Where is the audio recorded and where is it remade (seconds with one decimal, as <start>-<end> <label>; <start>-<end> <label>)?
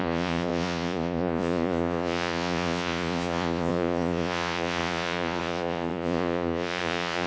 0.0-7.3 remade